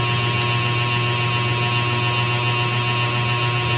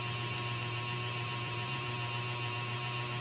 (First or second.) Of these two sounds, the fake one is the second